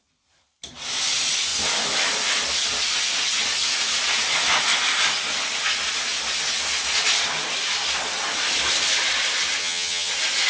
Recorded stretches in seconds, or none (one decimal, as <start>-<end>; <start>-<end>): 0.0-9.6; 10.1-10.5